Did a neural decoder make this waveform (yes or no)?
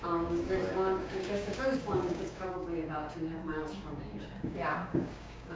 yes